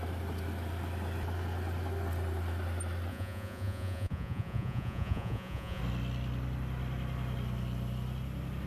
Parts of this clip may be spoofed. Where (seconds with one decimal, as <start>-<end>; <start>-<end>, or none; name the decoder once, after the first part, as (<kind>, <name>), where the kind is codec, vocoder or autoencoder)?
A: 3.1-5.8 (vocoder, Vocos)